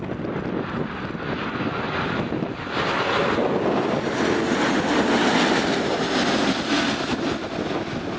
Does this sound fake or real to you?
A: real